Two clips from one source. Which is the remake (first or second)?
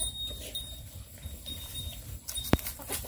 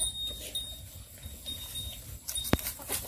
first